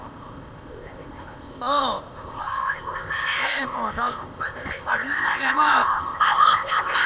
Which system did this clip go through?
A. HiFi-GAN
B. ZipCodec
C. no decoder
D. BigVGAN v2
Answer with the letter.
B